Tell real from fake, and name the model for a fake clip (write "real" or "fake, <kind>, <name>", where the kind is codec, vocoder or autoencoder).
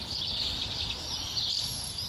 real